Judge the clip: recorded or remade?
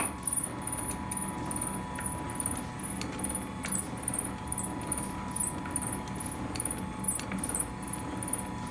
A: recorded